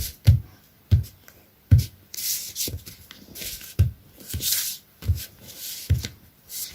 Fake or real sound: real